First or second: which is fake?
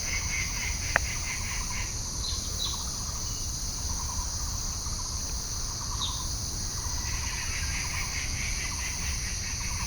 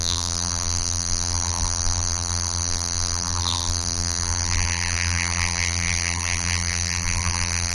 second